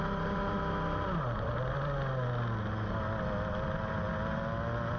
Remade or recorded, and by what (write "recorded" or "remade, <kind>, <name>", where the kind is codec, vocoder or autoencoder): recorded